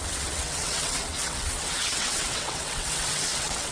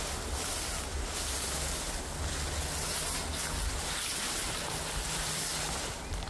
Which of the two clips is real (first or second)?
second